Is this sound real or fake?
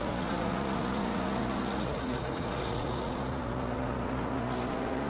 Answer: fake